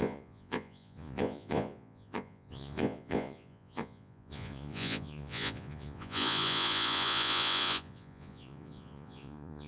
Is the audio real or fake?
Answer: fake